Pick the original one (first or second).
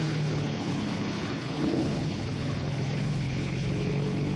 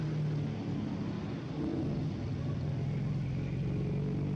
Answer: second